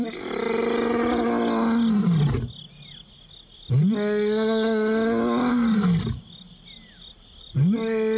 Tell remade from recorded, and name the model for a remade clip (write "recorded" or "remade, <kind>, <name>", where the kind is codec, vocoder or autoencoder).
recorded